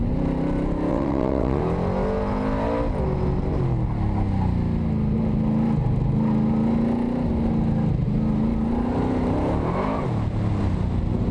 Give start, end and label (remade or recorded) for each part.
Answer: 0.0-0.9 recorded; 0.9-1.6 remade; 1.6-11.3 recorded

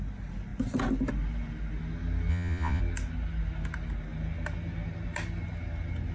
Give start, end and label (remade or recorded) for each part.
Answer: 0.0-2.3 recorded; 2.3-2.8 remade; 2.8-6.1 recorded

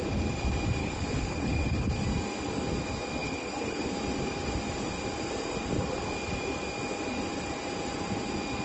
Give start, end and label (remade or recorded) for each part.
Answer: 0.0-0.8 recorded; 0.8-2.0 remade; 2.0-3.2 recorded; 3.2-3.9 remade; 3.9-8.6 recorded

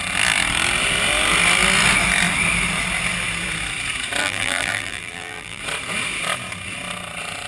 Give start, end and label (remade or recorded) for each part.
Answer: 0.0-4.2 recorded; 4.2-5.6 remade; 5.6-7.5 recorded